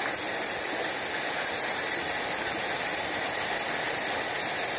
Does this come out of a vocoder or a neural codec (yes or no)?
no